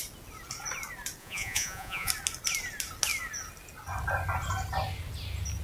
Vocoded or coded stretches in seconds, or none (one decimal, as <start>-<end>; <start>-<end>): 1.2-2.1